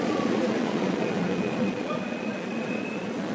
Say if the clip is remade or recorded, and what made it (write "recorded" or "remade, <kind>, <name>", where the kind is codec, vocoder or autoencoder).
remade, vocoder, Vocos